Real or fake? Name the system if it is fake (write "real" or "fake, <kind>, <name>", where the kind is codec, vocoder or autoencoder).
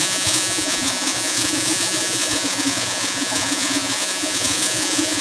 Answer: fake, vocoder, Vocos